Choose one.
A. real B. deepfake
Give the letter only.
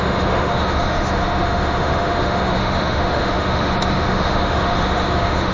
B